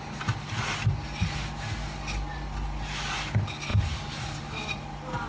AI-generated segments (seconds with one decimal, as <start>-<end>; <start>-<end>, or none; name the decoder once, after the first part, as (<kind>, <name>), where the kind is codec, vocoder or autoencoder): none